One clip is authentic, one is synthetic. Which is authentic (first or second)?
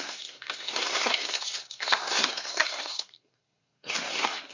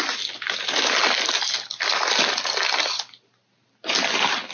second